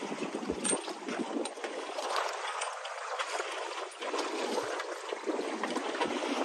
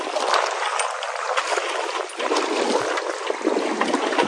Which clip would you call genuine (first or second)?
second